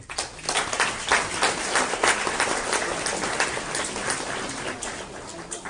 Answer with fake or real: real